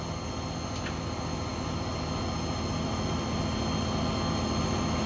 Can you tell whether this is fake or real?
real